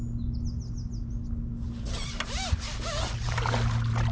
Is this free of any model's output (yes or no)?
yes